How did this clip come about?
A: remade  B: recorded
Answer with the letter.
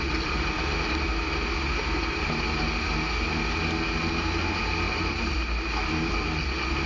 B